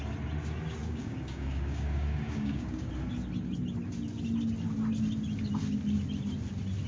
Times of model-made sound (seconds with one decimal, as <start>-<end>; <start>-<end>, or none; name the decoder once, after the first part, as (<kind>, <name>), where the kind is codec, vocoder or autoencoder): 0.8-2.9 (codec, DAC)